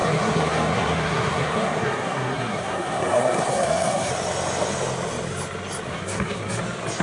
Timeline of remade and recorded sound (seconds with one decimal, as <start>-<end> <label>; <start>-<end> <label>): 0.0-4.1 remade; 4.1-5.9 recorded; 5.9-6.6 remade; 6.6-7.0 recorded